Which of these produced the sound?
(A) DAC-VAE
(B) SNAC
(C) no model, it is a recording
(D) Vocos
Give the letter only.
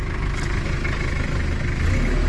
C